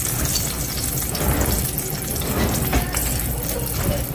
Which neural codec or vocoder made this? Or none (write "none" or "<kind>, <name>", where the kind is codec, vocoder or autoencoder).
none